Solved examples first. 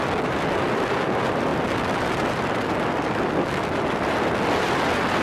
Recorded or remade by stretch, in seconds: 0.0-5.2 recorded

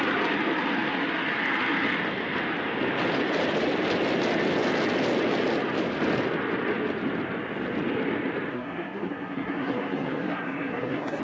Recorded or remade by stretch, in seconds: 0.0-8.5 recorded; 8.5-11.2 remade

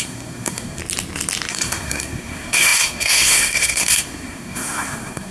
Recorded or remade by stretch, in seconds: 0.0-0.8 remade; 0.8-1.5 recorded; 1.5-5.3 remade